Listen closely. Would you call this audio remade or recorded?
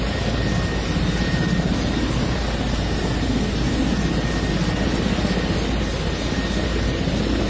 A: recorded